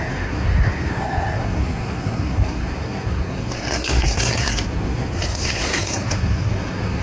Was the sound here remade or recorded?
remade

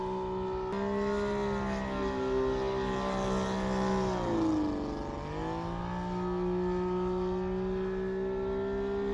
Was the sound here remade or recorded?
recorded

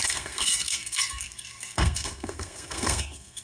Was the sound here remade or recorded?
remade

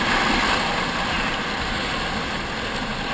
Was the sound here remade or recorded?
recorded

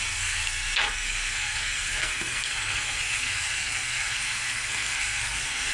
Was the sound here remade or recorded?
remade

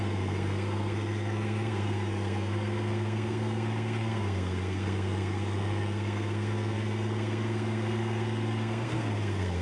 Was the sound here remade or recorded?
remade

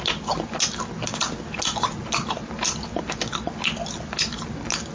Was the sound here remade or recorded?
recorded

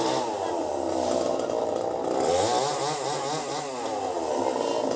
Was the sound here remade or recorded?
recorded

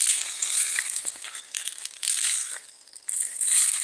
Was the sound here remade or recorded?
remade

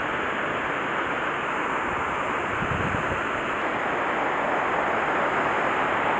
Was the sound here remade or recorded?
recorded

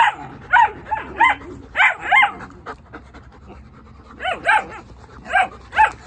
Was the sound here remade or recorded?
recorded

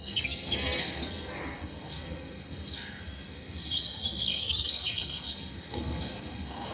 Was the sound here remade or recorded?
remade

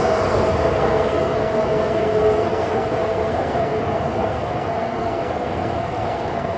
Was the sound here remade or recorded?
remade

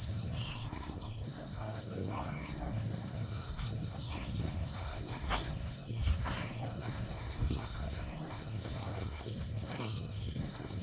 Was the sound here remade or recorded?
remade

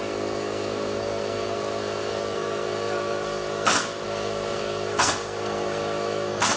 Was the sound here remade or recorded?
remade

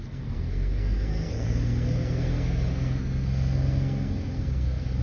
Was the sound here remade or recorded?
remade